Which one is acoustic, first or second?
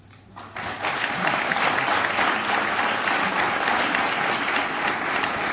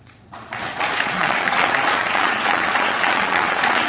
first